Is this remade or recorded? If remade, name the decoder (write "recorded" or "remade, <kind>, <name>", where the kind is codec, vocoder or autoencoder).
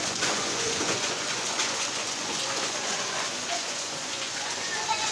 remade, vocoder, Vocos